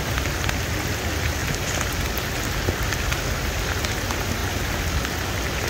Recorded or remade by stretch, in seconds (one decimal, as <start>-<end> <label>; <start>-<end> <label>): 0.0-5.7 recorded